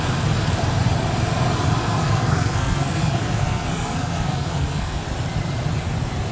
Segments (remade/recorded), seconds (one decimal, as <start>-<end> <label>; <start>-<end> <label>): 0.0-1.8 recorded; 1.8-5.0 remade; 5.0-6.3 recorded